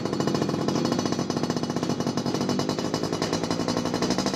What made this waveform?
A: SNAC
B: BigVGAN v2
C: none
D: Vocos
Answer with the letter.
C